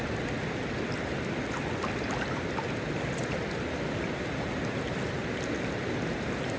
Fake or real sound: real